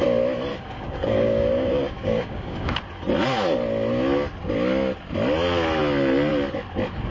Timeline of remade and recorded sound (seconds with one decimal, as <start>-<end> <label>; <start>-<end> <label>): 0.0-0.5 recorded; 0.5-2.8 remade; 2.8-7.1 recorded